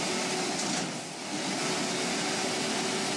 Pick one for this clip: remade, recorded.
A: recorded